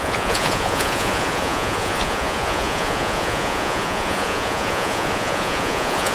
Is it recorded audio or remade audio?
remade